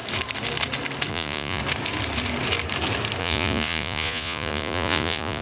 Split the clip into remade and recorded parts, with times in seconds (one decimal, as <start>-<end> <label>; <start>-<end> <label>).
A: 0.0-1.1 recorded; 1.1-1.6 remade; 1.6-3.2 recorded; 3.2-5.4 remade